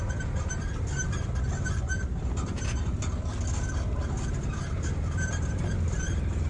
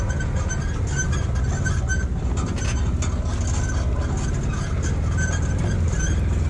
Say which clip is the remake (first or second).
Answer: first